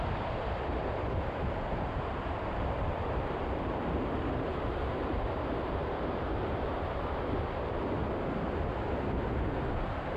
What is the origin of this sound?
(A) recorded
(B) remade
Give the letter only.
B